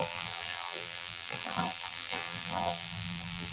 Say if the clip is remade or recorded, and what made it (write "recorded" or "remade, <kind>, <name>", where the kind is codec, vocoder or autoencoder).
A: remade, vocoder, BigVGAN v2